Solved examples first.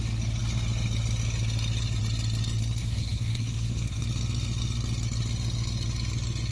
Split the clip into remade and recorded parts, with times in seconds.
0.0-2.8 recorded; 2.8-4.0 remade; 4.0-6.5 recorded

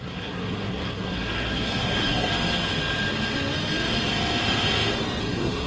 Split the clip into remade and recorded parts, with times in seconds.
0.0-2.3 remade; 2.3-5.2 recorded; 5.2-5.7 remade

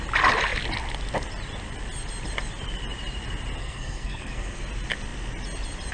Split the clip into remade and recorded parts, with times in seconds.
0.0-3.6 recorded; 3.6-4.6 remade; 4.6-5.9 recorded

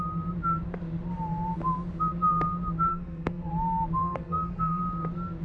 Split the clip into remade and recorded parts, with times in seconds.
0.0-2.9 recorded; 2.9-3.5 remade; 3.5-4.0 recorded; 4.0-4.8 remade; 4.8-5.4 recorded

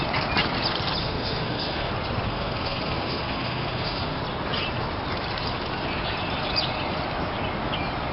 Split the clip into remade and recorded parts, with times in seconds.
0.0-1.0 recorded; 1.0-1.9 remade; 1.9-2.3 recorded; 2.3-4.2 remade; 4.2-8.1 recorded

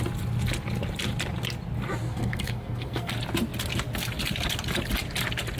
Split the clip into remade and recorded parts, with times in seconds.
0.0-2.0 recorded; 2.0-3.1 remade; 3.1-5.6 recorded

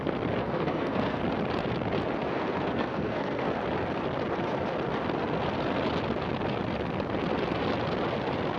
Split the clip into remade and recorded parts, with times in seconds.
0.0-0.4 recorded; 0.4-1.2 remade; 1.2-2.2 recorded; 2.2-3.5 remade; 3.5-8.6 recorded

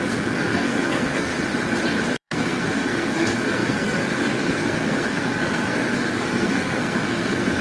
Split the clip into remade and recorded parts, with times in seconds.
0.0-1.3 remade; 1.3-2.1 recorded; 2.1-7.6 remade